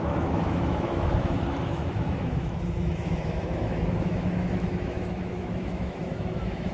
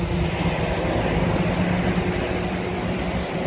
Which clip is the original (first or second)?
second